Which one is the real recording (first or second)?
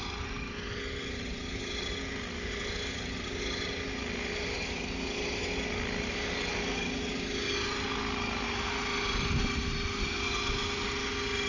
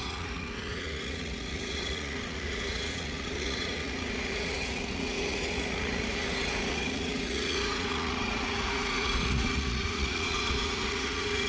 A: first